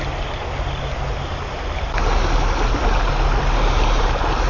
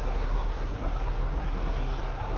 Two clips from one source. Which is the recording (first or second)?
first